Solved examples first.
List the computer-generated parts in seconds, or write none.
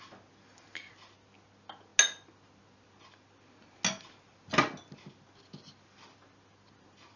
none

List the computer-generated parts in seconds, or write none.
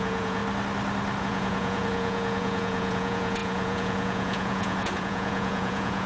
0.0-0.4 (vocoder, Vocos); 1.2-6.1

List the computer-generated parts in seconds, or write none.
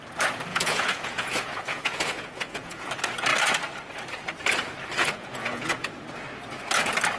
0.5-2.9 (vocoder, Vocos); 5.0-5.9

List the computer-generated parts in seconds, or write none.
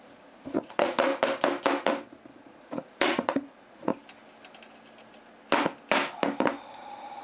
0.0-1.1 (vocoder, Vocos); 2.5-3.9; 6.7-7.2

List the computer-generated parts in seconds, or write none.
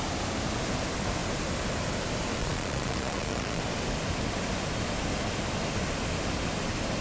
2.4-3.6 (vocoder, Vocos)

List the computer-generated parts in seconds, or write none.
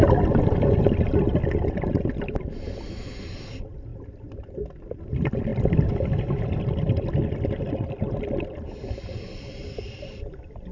none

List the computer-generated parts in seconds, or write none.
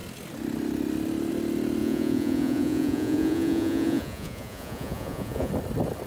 1.8-5.5 (vocoder, Vocos)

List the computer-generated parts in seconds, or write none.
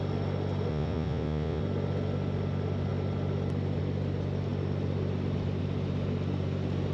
0.7-1.6 (vocoder, Vocos)